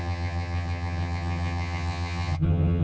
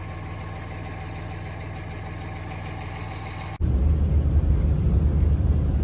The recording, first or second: second